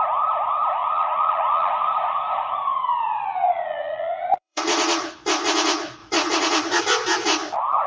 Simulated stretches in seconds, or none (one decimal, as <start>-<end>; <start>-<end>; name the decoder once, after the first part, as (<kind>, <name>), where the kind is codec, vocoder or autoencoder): 0.8-1.7 (vocoder, Vocos); 2.7-5.1; 6.0-6.8